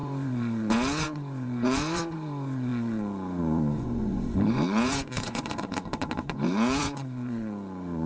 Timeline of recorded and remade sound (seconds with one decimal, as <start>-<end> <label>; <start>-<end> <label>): 0.0-8.1 remade